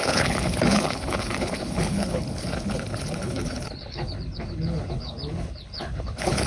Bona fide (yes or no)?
no